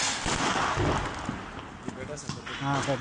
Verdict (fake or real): real